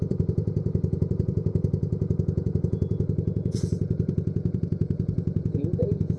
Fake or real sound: fake